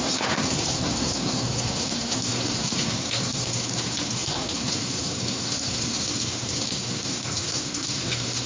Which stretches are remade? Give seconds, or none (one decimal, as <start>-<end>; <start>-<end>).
0.0-8.5